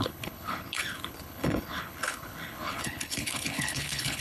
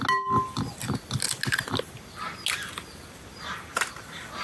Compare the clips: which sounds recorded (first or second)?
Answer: second